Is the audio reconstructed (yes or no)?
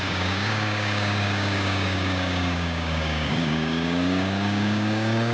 yes